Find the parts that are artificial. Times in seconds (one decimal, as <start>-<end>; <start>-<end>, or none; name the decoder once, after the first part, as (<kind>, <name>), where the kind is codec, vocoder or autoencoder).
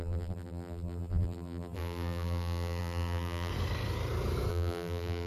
0.0-3.5 (vocoder, BigVGAN v2); 4.5-5.3